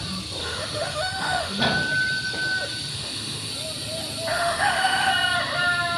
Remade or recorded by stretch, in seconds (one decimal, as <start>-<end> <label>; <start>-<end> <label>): 0.0-0.4 recorded; 0.4-1.6 remade; 1.6-2.9 recorded; 2.9-3.5 remade; 3.5-4.3 recorded; 4.3-5.1 remade; 5.1-6.0 recorded